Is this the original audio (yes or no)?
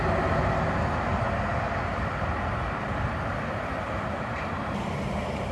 yes